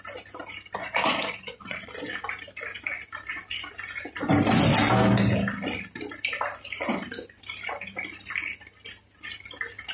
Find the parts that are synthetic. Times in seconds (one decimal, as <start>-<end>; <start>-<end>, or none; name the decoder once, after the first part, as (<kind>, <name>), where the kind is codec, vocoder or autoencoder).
0.8-2.1 (vocoder, Vocos)